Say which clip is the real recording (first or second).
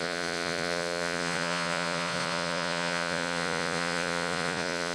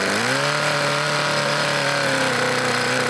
second